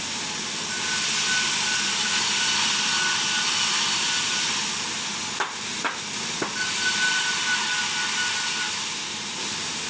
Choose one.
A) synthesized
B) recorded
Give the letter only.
B